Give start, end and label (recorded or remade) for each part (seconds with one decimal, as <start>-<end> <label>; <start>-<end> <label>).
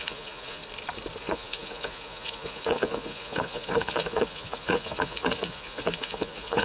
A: 0.0-0.6 remade; 0.6-1.2 recorded; 1.2-6.6 remade